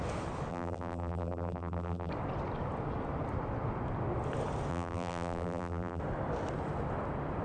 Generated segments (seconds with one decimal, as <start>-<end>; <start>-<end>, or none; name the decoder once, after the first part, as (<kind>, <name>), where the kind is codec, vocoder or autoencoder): 0.5-2.1 (vocoder, BigVGAN v2); 4.7-6.0